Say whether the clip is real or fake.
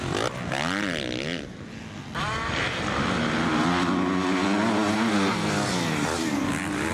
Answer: real